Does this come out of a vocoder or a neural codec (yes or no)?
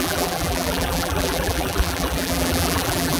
yes